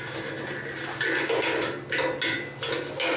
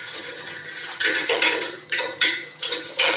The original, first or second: first